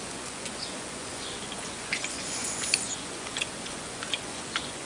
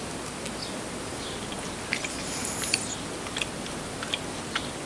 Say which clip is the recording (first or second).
second